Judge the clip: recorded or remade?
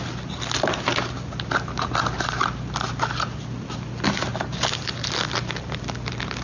recorded